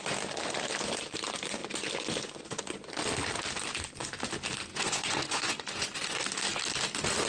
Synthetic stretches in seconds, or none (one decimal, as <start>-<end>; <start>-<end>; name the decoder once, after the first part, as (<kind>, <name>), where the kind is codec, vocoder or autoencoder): 4.7-6.2 (vocoder, Vocos)